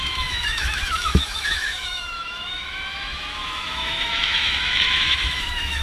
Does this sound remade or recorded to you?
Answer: remade